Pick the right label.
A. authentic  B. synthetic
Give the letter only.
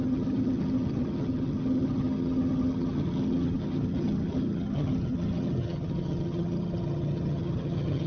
B